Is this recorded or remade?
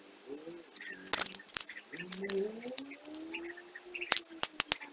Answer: recorded